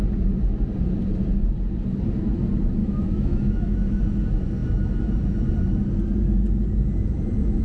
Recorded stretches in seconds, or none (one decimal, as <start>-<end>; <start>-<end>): 0.0-2.8; 4.0-7.6